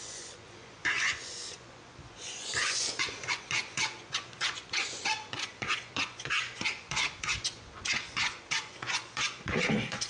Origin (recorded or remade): remade